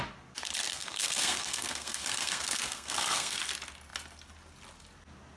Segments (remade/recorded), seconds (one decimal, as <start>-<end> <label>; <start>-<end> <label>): 0.0-0.7 recorded; 0.7-3.4 remade; 3.4-5.4 recorded